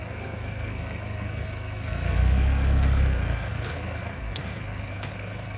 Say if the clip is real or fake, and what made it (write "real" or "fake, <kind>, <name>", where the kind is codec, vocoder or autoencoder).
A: fake, codec, SNAC